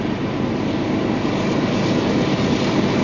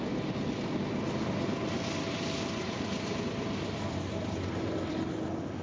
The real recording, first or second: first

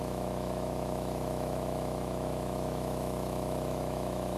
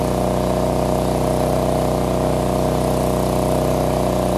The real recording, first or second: second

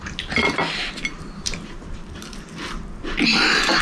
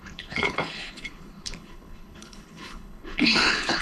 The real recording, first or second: first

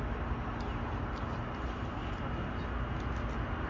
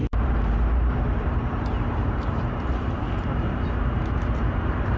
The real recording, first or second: first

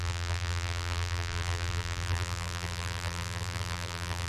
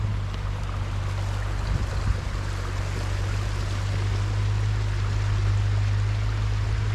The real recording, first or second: second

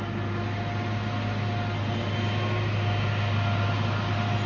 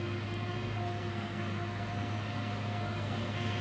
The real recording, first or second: first